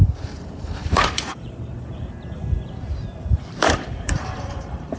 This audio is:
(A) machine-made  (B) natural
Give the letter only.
A